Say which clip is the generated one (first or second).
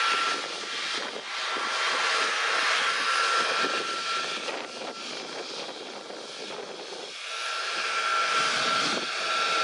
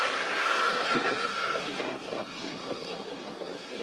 second